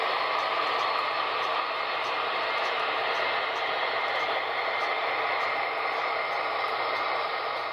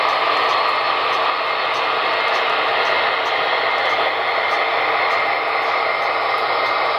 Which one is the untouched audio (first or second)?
second